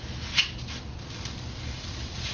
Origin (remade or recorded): remade